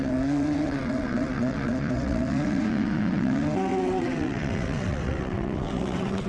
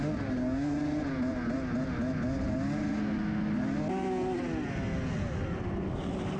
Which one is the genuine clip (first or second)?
second